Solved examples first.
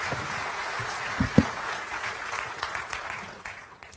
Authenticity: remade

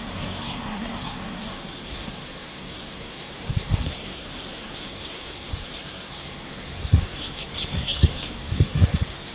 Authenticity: remade